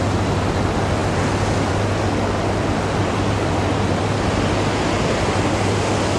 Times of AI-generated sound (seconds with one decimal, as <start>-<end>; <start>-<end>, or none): none